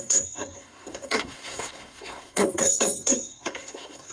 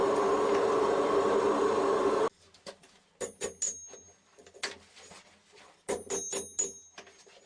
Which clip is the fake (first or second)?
first